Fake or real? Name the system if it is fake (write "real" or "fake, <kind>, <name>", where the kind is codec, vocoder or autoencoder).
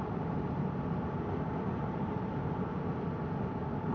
real